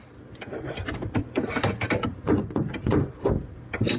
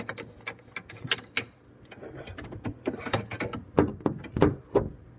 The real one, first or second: second